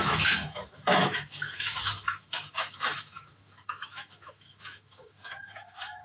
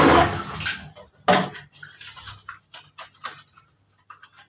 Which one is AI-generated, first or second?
first